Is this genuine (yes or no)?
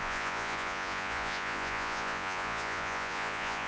no